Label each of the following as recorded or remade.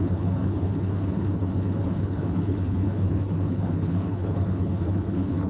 remade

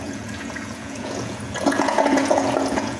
remade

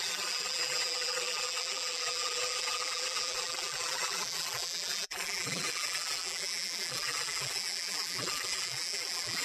remade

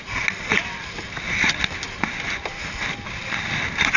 recorded